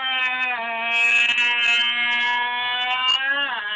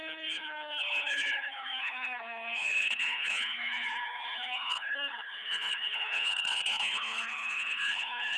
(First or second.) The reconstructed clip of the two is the second